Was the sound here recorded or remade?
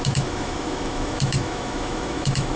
remade